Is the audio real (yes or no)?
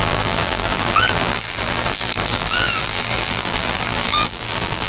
no